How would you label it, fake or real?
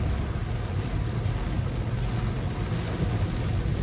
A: real